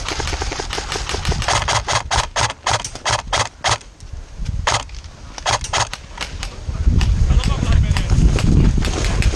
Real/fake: real